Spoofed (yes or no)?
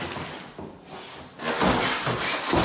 no